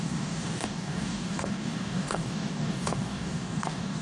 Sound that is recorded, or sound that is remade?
remade